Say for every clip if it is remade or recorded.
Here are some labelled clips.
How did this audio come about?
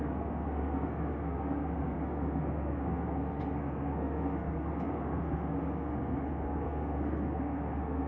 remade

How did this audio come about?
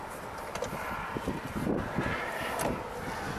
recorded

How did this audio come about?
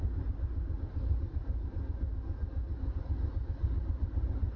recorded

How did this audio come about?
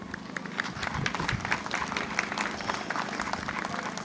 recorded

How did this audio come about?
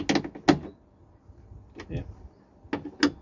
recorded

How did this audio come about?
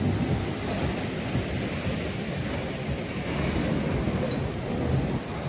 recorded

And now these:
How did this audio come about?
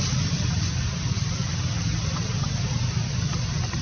recorded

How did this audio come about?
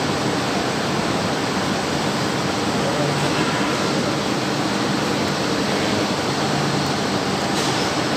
recorded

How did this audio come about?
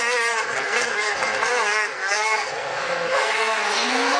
remade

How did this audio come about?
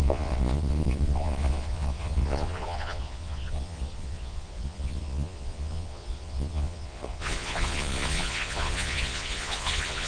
remade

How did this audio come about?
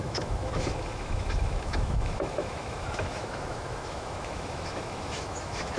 remade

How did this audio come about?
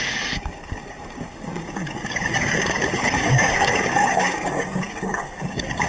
remade